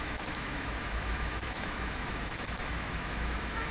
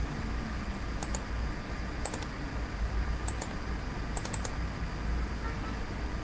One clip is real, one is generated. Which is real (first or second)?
second